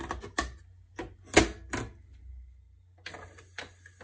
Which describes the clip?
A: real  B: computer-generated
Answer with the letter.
A